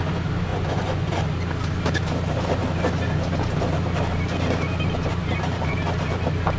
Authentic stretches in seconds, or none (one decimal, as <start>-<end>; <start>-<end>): 0.0-0.5; 1.2-6.6